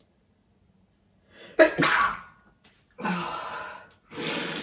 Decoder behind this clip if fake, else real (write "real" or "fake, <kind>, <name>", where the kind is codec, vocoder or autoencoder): real